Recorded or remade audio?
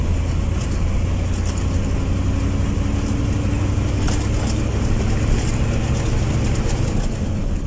recorded